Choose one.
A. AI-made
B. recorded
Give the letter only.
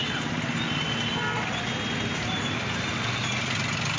B